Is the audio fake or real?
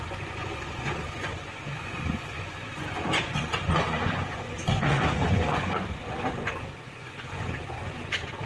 fake